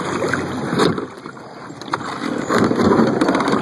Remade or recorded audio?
recorded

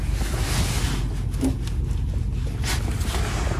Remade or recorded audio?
recorded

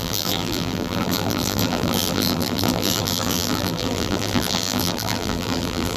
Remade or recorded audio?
remade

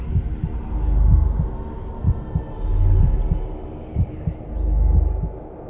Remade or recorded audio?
recorded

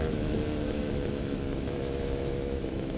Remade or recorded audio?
remade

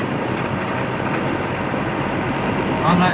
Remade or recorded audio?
recorded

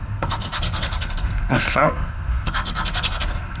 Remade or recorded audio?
remade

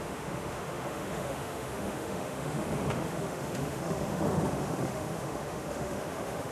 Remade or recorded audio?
remade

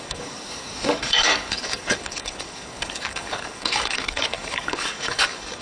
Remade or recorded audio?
remade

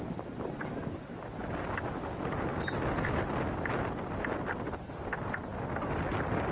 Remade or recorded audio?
recorded